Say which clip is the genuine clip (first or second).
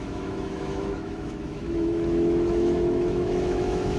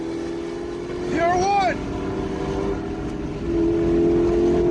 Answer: second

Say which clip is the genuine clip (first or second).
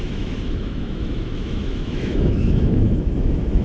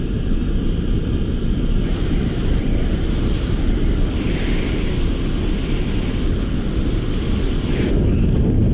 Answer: second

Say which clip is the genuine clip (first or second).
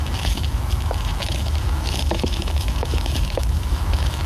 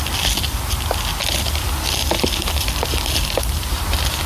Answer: second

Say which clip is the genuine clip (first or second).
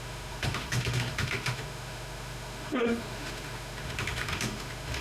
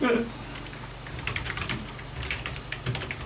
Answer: second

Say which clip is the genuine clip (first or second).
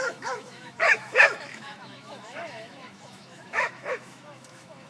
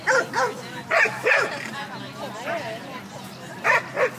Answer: second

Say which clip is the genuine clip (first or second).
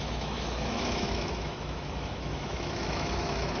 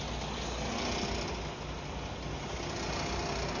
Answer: second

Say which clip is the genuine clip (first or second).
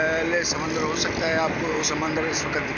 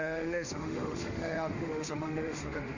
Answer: first